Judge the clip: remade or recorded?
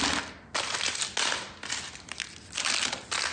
recorded